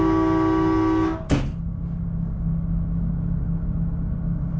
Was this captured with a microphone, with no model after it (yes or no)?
yes